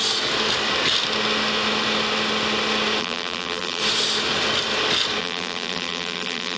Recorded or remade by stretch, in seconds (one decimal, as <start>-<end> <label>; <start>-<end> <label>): 0.0-3.0 recorded; 3.0-3.8 remade; 3.8-5.2 recorded; 5.2-6.6 remade